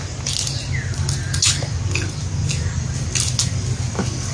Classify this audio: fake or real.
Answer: real